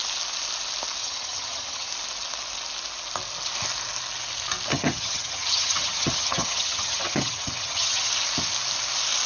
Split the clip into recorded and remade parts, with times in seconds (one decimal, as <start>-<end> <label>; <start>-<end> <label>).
0.0-1.0 recorded; 1.0-1.9 remade; 1.9-4.7 recorded; 4.7-8.1 remade; 8.1-9.3 recorded